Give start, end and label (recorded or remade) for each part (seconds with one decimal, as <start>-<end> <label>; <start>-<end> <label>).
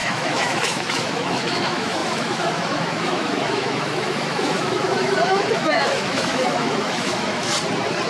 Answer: 0.0-7.5 remade; 7.5-8.1 recorded